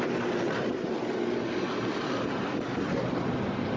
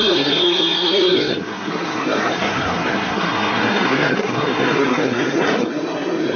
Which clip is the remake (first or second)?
second